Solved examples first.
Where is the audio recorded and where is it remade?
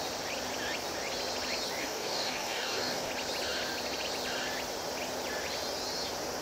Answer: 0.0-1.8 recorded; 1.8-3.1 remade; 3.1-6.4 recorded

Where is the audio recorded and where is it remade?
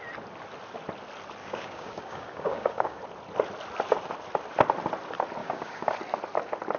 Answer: 0.0-1.4 recorded; 1.4-3.0 remade; 3.0-5.4 recorded; 5.4-5.9 remade; 5.9-6.8 recorded